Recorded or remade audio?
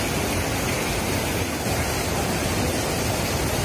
recorded